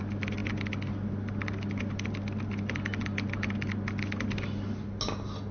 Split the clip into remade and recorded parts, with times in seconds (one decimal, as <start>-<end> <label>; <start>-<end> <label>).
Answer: 0.0-5.5 recorded

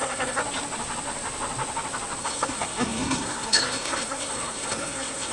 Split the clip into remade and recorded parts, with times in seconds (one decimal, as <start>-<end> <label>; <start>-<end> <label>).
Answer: 0.0-0.4 remade; 0.4-2.2 recorded; 2.2-5.3 remade